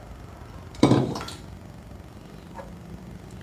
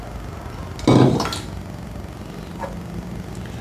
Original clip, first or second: second